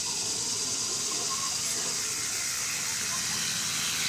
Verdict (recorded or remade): recorded